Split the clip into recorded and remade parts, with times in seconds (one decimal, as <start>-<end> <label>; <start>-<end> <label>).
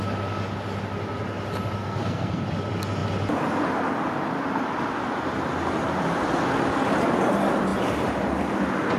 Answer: 0.0-1.8 recorded; 1.8-2.4 remade; 2.4-9.0 recorded